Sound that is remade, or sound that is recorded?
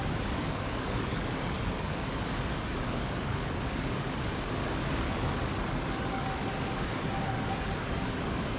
remade